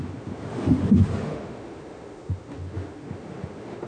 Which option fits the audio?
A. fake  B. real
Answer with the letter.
A